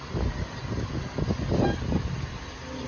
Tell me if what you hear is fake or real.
real